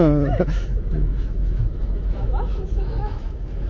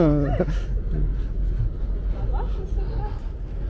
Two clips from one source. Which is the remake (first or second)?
first